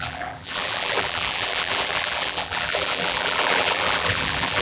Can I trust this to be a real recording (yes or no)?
no